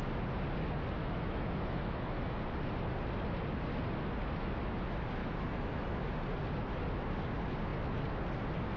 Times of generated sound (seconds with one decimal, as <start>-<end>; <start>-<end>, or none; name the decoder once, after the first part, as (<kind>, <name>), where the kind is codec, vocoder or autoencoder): 1.0-2.4 (autoencoder, DAC-VAE); 5.2-6.0